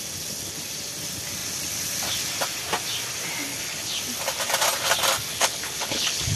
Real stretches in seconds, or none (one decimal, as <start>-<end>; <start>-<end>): 0.0-3.5; 4.0-5.3